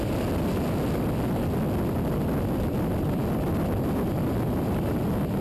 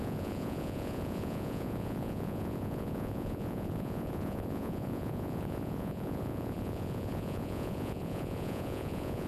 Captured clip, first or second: first